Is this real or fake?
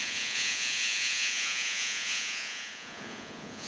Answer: fake